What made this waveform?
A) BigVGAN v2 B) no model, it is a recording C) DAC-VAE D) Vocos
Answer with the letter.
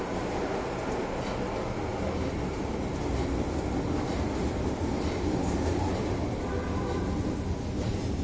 B